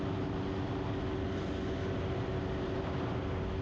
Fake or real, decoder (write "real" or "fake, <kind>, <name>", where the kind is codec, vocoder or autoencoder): real